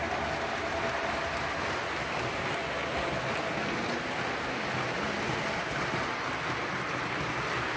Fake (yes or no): no